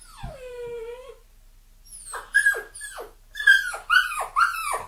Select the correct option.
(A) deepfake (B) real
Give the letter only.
B